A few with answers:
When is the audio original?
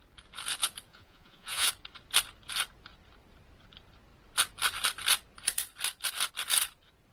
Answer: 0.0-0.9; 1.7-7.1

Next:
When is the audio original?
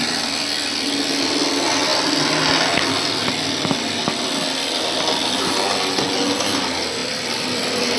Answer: 0.0-8.0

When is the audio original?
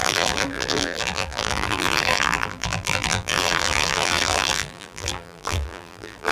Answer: none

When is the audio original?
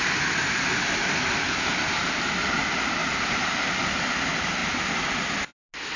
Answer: 0.0-1.7; 2.6-3.0; 4.0-6.0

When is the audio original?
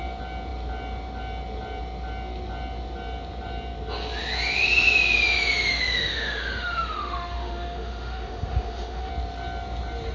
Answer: 0.0-5.7; 9.1-10.1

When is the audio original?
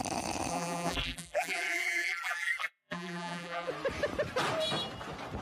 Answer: 0.0-0.5; 3.7-5.4